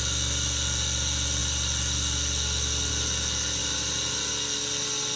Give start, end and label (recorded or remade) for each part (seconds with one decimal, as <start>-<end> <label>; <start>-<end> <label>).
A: 0.0-3.6 recorded; 3.6-4.3 remade; 4.3-5.2 recorded